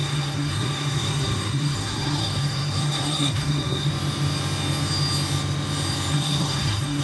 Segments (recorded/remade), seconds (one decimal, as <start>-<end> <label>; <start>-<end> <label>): 0.0-3.9 remade; 3.9-6.1 recorded; 6.1-7.0 remade